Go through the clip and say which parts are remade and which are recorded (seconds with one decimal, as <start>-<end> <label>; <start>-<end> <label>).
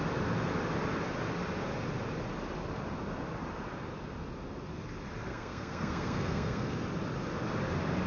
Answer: 0.0-5.3 recorded; 5.3-6.8 remade; 6.8-8.1 recorded